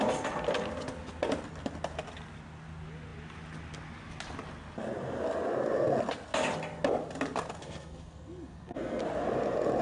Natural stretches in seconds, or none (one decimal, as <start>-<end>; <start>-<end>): 0.0-7.6; 9.0-9.8